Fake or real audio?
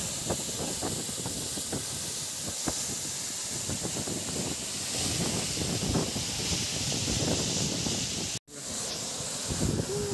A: real